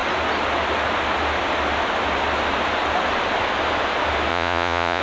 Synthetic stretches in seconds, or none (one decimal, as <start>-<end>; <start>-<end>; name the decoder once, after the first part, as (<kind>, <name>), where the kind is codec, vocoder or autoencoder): 4.3-5.0 (vocoder, Vocos)